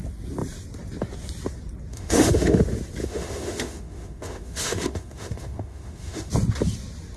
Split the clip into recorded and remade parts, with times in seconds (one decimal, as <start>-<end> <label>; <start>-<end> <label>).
0.0-1.9 recorded; 1.9-2.6 remade; 2.6-3.0 recorded; 3.0-6.3 remade; 6.3-7.2 recorded